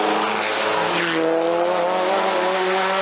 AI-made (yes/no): no